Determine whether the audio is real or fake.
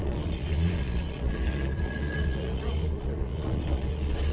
fake